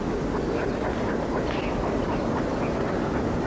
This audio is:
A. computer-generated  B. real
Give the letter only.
B